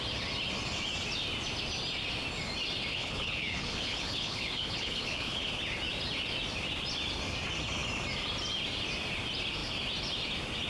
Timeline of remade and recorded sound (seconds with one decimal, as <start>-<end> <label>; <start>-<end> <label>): 0.0-2.9 recorded; 2.9-5.5 remade; 5.5-10.7 recorded